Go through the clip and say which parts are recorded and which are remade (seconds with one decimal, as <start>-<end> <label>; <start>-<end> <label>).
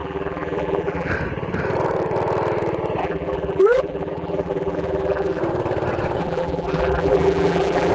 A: 0.0-1.1 remade; 1.1-3.0 recorded; 3.0-5.4 remade; 5.4-6.2 recorded; 6.2-7.9 remade